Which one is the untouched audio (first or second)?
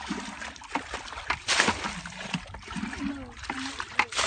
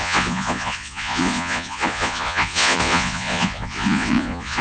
first